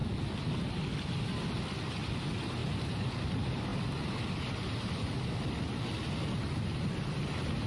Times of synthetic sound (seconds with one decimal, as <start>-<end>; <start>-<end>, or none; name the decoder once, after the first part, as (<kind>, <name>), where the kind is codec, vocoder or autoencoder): none